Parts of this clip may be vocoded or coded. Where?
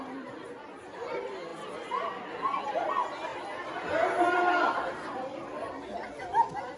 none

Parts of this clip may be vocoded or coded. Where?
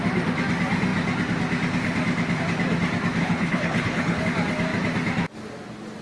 3.2-4.2 (codec, HILCodec)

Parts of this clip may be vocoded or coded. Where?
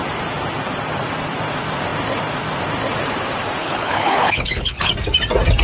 3.6-4.9 (codec, HILCodec)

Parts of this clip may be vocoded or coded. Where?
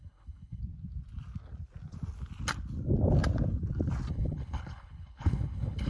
0.0-0.6 (codec, HILCodec); 4.1-5.9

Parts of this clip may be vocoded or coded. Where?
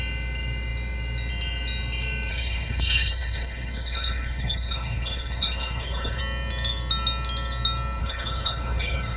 2.3-6.2 (codec, HILCodec); 8.0-9.2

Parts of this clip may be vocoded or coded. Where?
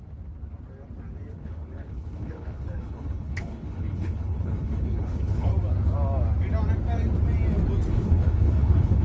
1.3-5.5 (codec, HILCodec); 7.9-9.0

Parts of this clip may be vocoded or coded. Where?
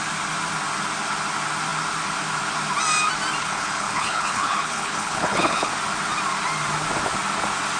3.4-5.7 (codec, HILCodec)